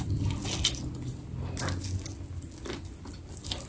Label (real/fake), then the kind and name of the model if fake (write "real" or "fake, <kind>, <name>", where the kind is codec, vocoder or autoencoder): real